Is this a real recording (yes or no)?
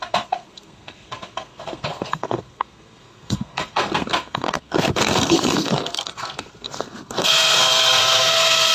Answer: no